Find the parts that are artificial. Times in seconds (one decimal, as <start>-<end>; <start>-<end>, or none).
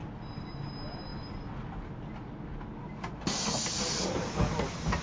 none